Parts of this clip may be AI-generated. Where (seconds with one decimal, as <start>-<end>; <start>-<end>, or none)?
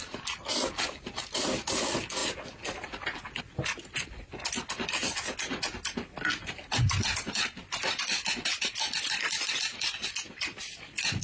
none